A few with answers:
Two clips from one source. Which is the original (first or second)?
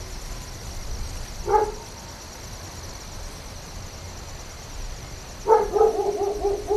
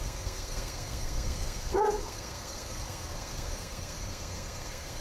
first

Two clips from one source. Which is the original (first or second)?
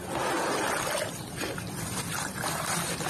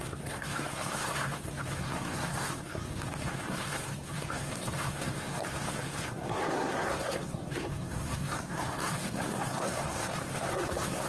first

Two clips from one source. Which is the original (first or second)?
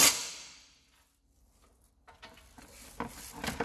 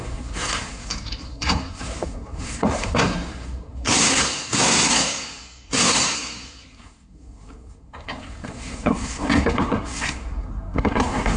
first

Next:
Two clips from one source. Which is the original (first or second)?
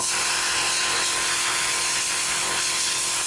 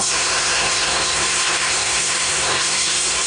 first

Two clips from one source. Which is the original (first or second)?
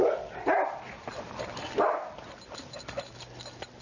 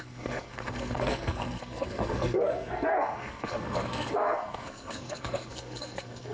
first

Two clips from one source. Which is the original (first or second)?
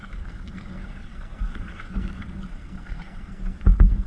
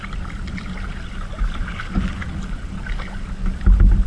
second